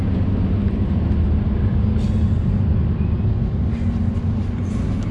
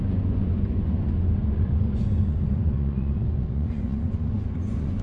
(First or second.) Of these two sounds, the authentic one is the first